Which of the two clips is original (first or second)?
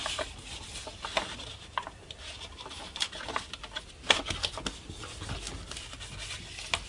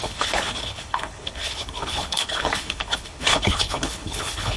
first